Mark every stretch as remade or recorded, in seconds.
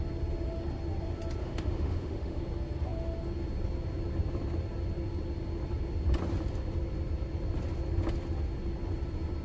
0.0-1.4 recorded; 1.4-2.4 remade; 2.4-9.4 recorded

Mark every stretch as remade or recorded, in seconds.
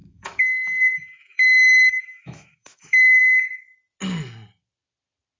0.0-3.2 remade; 3.2-5.4 recorded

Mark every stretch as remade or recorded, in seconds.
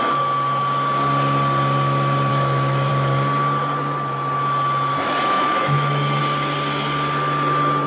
0.0-2.3 recorded; 2.3-2.9 remade; 2.9-4.9 recorded; 4.9-6.2 remade; 6.2-7.9 recorded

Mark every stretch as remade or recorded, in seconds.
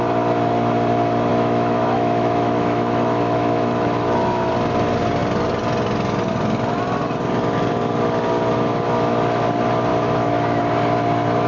0.0-1.3 recorded; 1.3-4.5 remade; 4.5-9.9 recorded; 9.9-10.6 remade; 10.6-11.5 recorded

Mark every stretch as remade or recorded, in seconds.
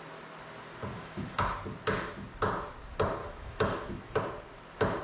0.0-0.9 recorded; 0.9-1.5 remade; 1.5-3.2 recorded; 3.2-4.2 remade; 4.2-5.0 recorded